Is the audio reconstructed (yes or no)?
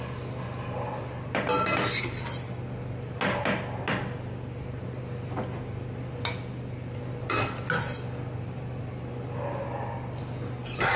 no